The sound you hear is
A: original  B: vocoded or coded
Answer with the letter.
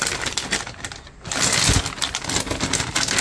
A